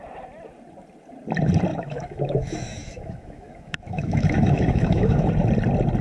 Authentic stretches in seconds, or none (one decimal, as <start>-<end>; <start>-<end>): 0.0-1.7; 5.3-6.0